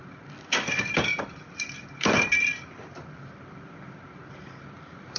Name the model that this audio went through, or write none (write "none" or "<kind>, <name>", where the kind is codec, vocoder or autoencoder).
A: vocoder, BigVGAN v2